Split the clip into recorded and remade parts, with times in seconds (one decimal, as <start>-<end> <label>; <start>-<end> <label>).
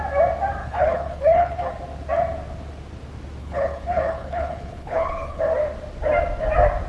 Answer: 0.0-0.6 recorded; 0.6-1.7 remade; 1.7-3.4 recorded; 3.4-5.4 remade; 5.4-6.9 recorded